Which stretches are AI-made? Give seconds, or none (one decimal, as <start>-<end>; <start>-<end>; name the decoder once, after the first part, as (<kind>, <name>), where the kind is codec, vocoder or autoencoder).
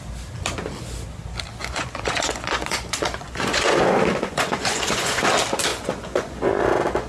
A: 1.6-5.2 (vocoder, Vocos); 5.7-7.1